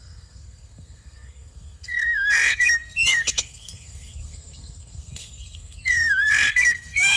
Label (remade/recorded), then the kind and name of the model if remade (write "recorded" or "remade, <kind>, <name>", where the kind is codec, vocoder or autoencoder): remade, codec, SNAC